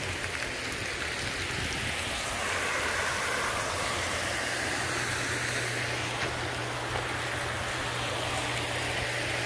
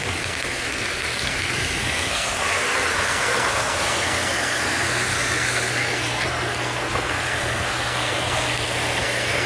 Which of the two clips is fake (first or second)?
second